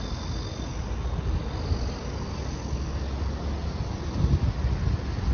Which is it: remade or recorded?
recorded